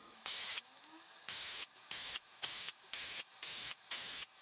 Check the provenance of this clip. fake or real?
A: fake